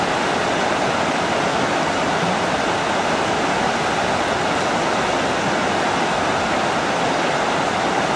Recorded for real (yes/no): yes